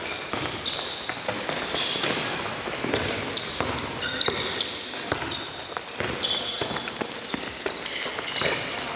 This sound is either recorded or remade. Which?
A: recorded